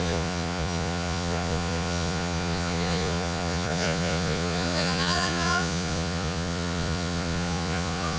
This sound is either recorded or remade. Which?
remade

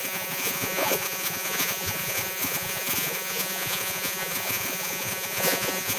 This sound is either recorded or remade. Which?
remade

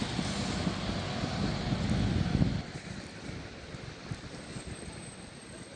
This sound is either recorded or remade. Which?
recorded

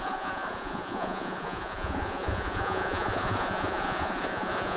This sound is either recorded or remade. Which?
remade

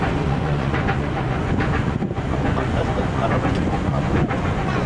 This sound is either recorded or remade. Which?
remade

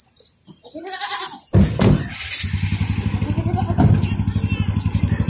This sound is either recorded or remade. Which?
recorded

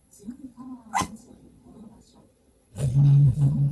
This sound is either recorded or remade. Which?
remade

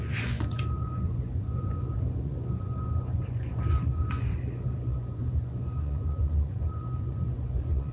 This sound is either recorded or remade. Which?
remade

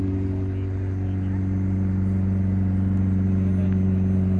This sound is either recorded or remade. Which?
recorded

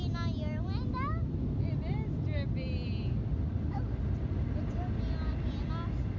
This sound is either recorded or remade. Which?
recorded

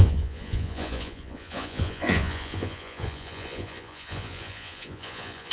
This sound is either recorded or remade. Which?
remade